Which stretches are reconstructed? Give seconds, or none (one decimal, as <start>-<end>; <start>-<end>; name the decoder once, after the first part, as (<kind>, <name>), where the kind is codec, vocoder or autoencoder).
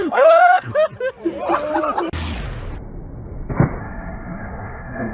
0.0-0.7 (codec, SNAC); 3.8-5.1